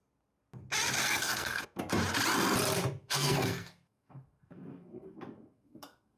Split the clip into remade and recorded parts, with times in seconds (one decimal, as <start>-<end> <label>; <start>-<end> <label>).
0.0-1.0 recorded; 1.0-1.8 remade; 1.8-3.0 recorded; 3.0-6.2 remade